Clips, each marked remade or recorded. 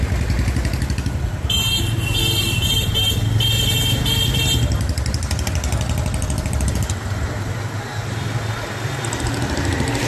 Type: recorded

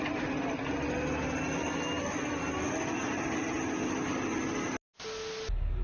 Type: recorded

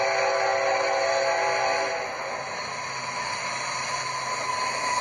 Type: recorded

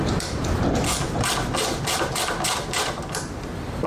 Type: remade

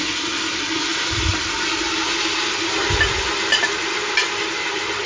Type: remade